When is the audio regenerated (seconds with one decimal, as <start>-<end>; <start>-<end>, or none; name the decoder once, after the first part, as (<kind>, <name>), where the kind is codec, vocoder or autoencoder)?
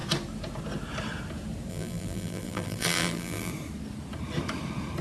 1.7-3.5 (vocoder, BigVGAN v2)